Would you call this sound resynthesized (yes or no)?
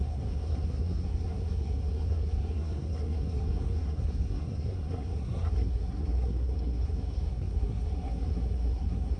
yes